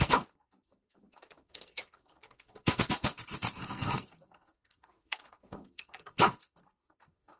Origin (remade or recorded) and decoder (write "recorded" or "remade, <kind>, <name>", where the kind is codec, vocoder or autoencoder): remade, codec, SNAC